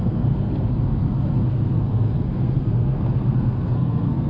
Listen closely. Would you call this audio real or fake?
fake